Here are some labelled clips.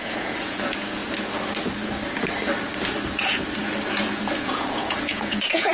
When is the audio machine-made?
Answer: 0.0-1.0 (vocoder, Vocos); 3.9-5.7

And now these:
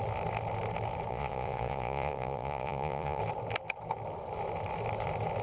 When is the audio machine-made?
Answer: 1.1-3.2 (vocoder, Vocos)

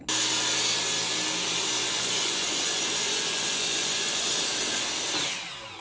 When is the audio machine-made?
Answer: 1.9-4.3 (vocoder, Vocos)

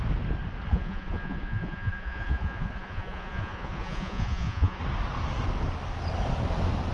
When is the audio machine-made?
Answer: 0.7-4.8 (vocoder, Vocos)